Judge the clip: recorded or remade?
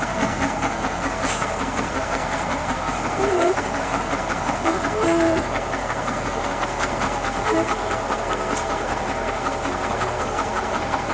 remade